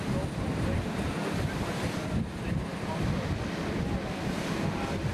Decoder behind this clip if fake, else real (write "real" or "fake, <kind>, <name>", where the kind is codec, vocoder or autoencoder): fake, vocoder, BigVGAN v2